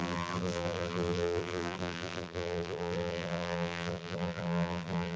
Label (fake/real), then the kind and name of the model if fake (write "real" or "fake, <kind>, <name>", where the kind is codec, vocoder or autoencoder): fake, vocoder, BigVGAN v2